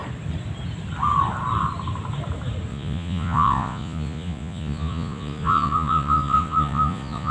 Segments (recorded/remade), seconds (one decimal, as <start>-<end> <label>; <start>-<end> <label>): 0.0-2.7 recorded; 2.7-7.3 remade